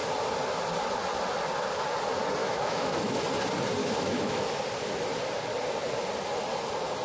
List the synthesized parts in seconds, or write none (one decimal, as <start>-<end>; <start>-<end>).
2.4-3.2; 3.8-4.5